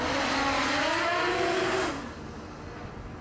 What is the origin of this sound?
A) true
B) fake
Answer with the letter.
A